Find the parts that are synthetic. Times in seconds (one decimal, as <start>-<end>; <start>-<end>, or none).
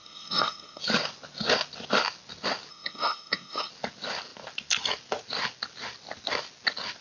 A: 0.0-0.8; 2.7-3.7